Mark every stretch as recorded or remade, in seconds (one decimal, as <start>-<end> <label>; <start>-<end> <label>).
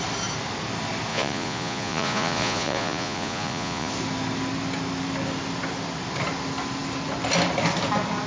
0.0-1.1 recorded; 1.1-3.9 remade; 3.9-8.3 recorded